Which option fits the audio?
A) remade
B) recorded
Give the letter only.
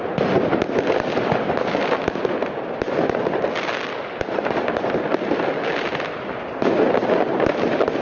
B